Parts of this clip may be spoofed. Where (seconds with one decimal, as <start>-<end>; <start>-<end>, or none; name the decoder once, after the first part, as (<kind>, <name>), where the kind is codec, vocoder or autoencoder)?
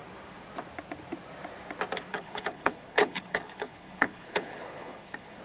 2.1-5.4 (codec, HILCodec)